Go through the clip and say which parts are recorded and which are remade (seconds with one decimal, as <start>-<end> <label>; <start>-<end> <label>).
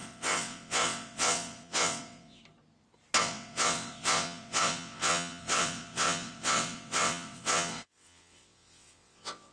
0.0-2.4 remade; 2.4-3.2 recorded; 3.2-9.5 remade